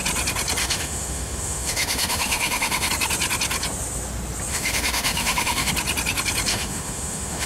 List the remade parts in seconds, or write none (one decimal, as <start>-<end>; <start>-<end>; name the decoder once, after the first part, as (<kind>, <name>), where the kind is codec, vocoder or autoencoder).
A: 0.6-2.9 (autoencoder, DAC-VAE); 4.5-5.7; 6.5-7.5